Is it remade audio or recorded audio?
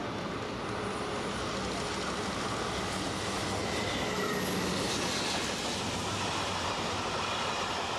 recorded